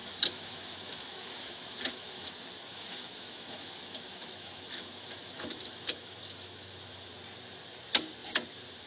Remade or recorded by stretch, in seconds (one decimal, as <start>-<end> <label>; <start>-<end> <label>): 0.0-2.3 remade; 2.3-2.7 recorded; 2.7-7.1 remade; 7.1-8.9 recorded